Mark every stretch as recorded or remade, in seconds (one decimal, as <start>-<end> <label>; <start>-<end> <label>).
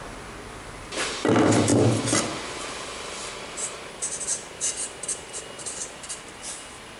0.0-7.0 recorded